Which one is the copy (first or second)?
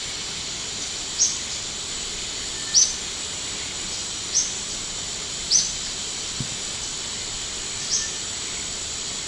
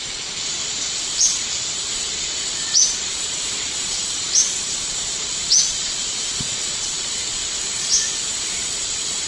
second